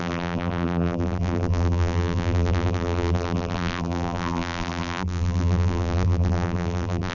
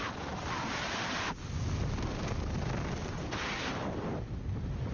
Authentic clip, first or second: second